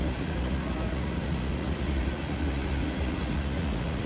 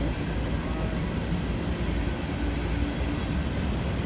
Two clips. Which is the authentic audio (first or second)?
second